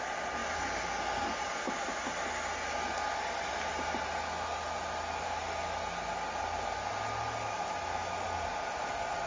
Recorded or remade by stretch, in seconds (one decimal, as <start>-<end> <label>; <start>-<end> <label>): 0.0-9.3 recorded